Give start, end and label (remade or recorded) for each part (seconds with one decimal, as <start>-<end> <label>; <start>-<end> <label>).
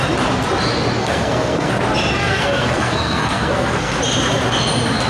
0.0-1.0 recorded; 1.0-1.7 remade; 1.7-2.2 recorded; 2.2-4.0 remade; 4.0-5.1 recorded